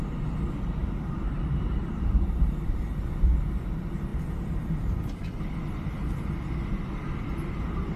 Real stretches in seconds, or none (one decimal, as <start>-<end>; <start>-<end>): 0.0-0.8; 3.0-8.0